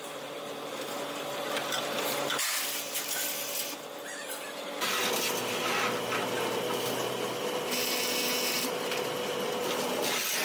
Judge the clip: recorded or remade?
recorded